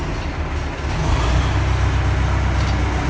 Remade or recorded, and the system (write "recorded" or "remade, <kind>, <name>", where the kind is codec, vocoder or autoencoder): recorded